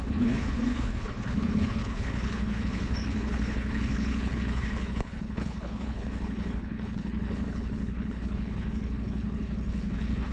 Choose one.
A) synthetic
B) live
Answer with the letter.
A